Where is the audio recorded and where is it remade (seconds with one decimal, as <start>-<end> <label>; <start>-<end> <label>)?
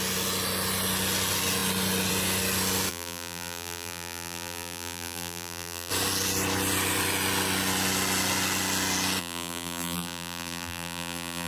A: 0.0-2.9 recorded; 2.9-5.9 remade; 5.9-9.2 recorded; 9.2-11.5 remade